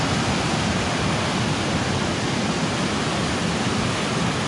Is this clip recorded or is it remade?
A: recorded